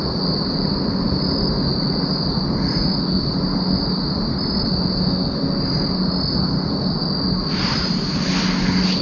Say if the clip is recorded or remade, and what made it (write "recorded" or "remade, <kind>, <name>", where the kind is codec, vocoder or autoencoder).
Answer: recorded